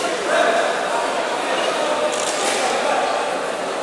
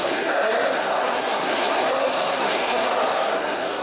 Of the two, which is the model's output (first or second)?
second